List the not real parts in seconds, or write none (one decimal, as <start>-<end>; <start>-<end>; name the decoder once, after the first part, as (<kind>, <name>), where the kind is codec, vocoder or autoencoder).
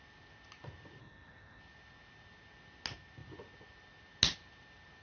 1.0-1.6 (codec, SNAC)